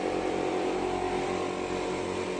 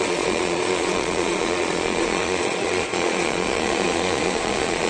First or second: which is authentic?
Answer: first